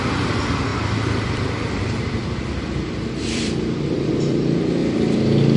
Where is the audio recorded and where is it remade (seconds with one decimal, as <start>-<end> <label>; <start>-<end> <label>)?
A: 0.0-4.8 remade; 4.8-5.6 recorded